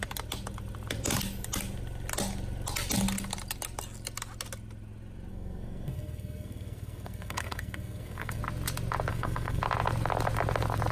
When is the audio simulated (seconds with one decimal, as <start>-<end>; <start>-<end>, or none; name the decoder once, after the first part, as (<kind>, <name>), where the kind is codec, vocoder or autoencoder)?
5.3-8.4 (codec, SNAC); 9.1-9.6